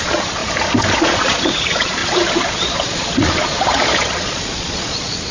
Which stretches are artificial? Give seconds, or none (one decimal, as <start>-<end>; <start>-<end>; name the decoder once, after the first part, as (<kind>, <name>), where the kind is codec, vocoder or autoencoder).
0.0-0.4 (vocoder, Vocos); 0.9-5.3